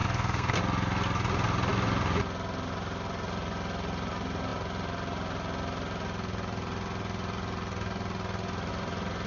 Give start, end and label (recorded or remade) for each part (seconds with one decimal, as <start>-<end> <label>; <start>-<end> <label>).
0.0-0.6 remade; 0.6-9.3 recorded